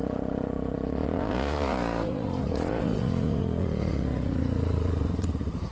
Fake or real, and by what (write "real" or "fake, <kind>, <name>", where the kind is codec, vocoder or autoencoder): fake, vocoder, Vocos